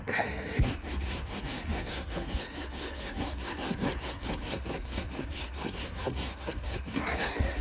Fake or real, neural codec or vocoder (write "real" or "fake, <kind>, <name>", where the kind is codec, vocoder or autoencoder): fake, codec, SNAC